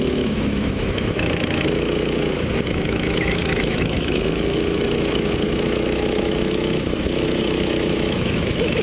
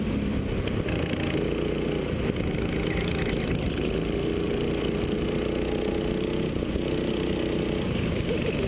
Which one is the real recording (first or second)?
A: second